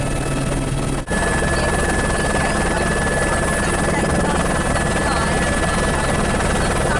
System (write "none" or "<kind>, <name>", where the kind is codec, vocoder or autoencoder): none